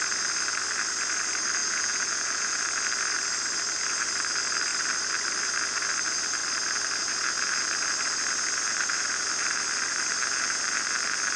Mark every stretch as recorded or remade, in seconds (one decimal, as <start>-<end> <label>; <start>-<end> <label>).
0.0-1.6 recorded; 1.6-2.6 remade; 2.6-11.4 recorded